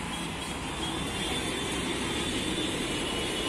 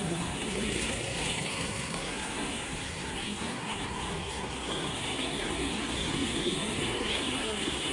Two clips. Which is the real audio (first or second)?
first